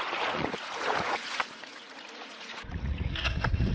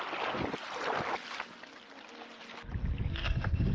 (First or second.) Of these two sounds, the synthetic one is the first